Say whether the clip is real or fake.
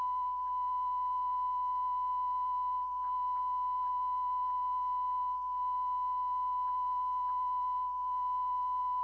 real